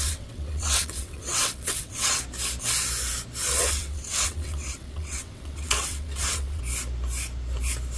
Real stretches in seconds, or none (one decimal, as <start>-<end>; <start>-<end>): 2.2-3.4; 6.6-8.0